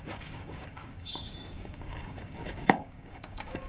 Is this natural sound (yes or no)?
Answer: no